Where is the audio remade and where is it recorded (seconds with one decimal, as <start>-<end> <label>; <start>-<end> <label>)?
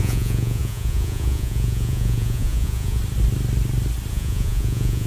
0.0-3.0 remade; 3.0-4.1 recorded; 4.1-5.1 remade